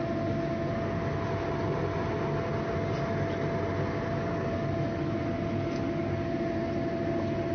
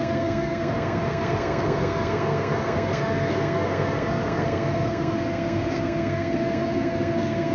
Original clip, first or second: first